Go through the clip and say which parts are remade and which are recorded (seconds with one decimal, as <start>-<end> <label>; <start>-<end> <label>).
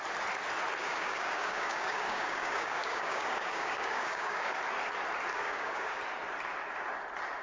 0.0-0.8 recorded; 0.8-4.5 remade; 4.5-5.3 recorded; 5.3-6.0 remade; 6.0-7.4 recorded